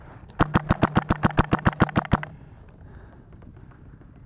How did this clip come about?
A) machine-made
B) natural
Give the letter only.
B